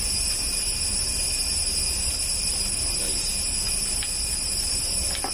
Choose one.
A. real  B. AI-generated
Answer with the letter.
A